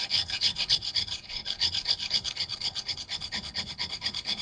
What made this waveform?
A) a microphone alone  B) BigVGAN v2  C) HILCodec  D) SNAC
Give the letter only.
C